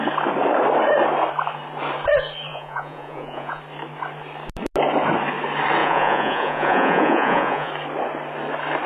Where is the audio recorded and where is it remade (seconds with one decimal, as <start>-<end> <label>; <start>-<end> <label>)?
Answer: 0.0-2.5 recorded; 2.5-3.6 remade; 3.6-5.8 recorded; 5.8-7.7 remade; 7.7-8.9 recorded